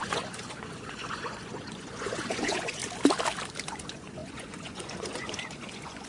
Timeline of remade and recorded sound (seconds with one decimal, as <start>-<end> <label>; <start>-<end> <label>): 0.0-2.8 remade; 2.8-3.7 recorded; 3.7-6.1 remade

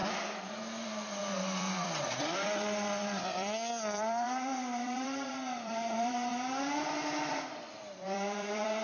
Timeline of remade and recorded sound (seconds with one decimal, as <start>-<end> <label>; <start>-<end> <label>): 0.0-6.3 remade; 6.3-7.3 recorded; 7.3-8.8 remade

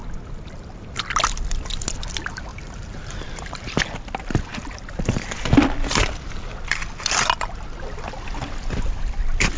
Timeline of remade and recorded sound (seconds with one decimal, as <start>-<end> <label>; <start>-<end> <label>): 0.0-2.5 recorded; 2.5-3.8 remade; 3.8-9.6 recorded

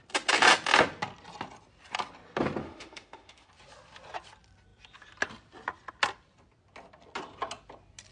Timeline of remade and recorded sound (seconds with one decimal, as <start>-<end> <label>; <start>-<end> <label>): 0.0-2.6 recorded; 2.6-3.5 remade; 3.5-8.1 recorded

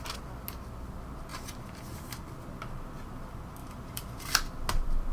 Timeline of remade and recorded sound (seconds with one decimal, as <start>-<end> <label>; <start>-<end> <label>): 0.0-3.6 recorded; 3.6-4.2 remade; 4.2-5.1 recorded

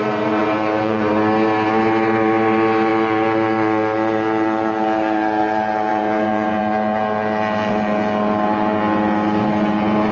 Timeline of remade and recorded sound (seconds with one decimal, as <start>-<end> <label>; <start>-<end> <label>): 0.0-0.4 recorded; 0.4-1.1 remade; 1.1-5.9 recorded; 5.9-6.6 remade; 6.6-10.1 recorded

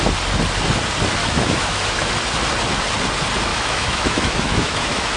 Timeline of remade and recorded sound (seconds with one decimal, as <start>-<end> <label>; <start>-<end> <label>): 0.0-1.2 recorded; 1.2-2.1 remade; 2.1-3.5 recorded; 3.5-5.2 remade

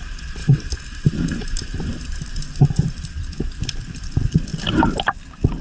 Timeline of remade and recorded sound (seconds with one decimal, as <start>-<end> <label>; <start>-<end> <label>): 0.0-5.6 recorded